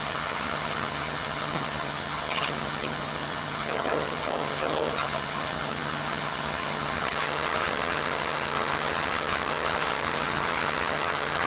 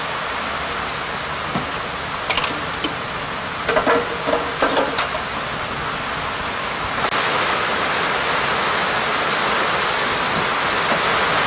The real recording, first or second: second